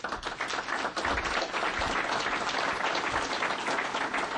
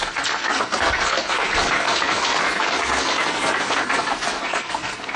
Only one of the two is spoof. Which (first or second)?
second